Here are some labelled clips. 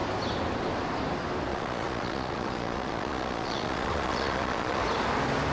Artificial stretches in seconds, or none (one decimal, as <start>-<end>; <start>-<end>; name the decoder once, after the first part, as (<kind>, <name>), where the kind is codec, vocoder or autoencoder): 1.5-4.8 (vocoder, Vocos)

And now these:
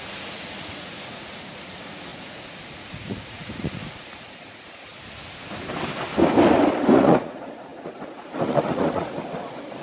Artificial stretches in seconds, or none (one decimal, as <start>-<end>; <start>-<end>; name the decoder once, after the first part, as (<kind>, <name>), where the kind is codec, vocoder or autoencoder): 0.0-4.9 (vocoder, Vocos); 6.9-9.8

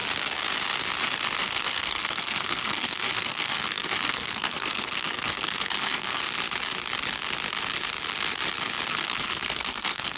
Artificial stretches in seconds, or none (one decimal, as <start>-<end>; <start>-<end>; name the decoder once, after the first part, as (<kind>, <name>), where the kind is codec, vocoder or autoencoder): 1.4-6.2 (codec, SNAC); 8.9-10.2